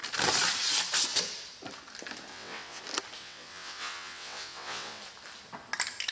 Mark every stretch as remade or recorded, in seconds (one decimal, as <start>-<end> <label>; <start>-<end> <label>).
0.0-2.3 recorded; 2.3-2.8 remade; 2.8-3.2 recorded; 3.2-5.0 remade; 5.0-6.1 recorded